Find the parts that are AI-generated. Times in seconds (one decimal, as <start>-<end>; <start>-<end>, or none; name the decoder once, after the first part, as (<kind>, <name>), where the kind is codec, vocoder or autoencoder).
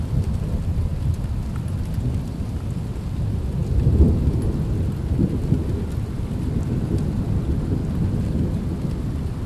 none